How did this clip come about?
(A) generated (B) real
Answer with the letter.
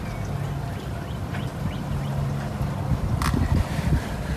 B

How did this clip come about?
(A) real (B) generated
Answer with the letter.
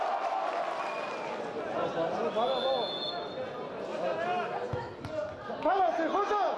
A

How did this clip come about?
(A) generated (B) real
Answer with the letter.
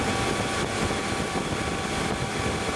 B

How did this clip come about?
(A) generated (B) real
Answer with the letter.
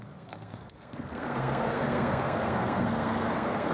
A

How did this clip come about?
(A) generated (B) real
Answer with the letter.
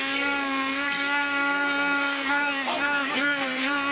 A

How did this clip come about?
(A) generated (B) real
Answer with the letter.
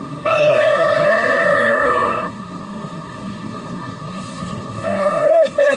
A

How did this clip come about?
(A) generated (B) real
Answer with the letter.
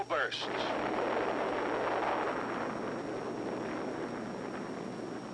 B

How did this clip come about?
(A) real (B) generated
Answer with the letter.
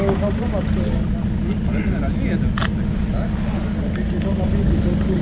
A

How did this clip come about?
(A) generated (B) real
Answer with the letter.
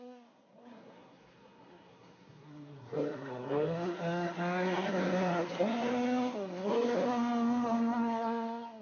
A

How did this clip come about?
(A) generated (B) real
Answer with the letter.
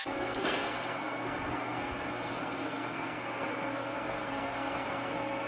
A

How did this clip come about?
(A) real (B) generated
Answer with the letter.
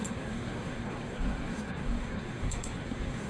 B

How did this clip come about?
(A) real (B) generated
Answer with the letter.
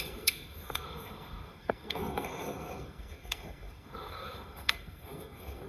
B